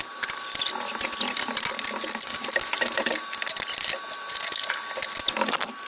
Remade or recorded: recorded